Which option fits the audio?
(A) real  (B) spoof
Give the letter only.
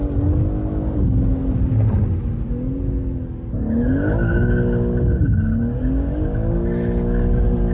A